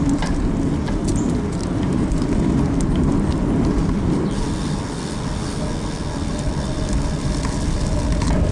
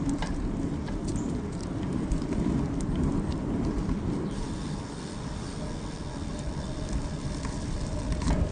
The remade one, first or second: second